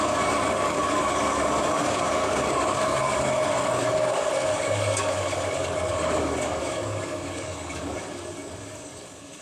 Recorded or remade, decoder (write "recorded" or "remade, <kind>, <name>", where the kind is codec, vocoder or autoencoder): remade, codec, DAC